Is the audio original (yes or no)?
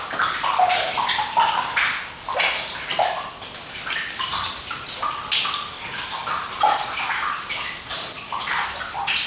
yes